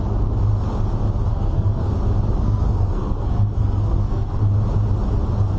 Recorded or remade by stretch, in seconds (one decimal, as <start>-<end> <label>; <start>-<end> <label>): 0.0-1.3 recorded; 1.3-1.9 remade; 1.9-2.4 recorded; 2.4-4.3 remade; 4.3-5.6 recorded